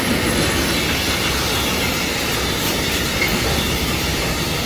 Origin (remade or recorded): recorded